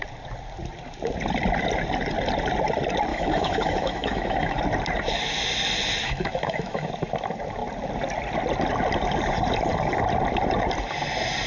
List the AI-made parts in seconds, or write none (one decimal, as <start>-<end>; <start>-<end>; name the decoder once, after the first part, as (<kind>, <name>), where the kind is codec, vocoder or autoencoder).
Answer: 3.1-4.6 (autoencoder, DAC-VAE); 6.0-6.9

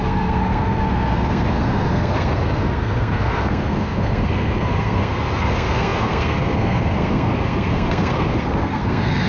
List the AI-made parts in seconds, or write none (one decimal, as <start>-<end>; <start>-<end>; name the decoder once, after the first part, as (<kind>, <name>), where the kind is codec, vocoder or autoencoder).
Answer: 0.0-9.3 (codec, SNAC)

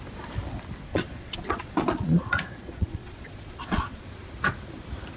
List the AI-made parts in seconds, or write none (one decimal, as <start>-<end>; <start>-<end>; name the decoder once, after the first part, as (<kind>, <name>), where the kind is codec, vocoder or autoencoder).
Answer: 0.9-4.0 (vocoder, Vocos)

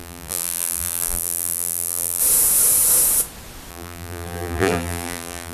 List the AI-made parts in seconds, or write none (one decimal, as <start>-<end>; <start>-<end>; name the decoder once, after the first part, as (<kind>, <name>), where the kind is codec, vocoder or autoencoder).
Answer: 0.0-2.2 (vocoder, BigVGAN v2); 3.7-5.5